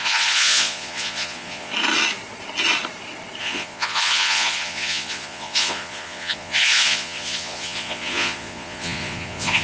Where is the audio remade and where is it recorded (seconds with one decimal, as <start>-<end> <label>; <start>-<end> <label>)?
0.0-1.7 remade; 1.7-3.4 recorded; 3.4-9.6 remade